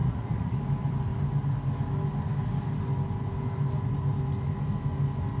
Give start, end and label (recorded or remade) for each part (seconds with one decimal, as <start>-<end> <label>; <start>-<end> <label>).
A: 0.0-0.6 remade; 0.6-5.4 recorded